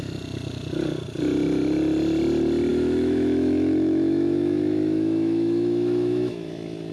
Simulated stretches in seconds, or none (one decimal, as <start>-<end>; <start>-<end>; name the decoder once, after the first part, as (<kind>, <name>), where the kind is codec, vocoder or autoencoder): 2.7-6.5 (autoencoder, DAC-VAE)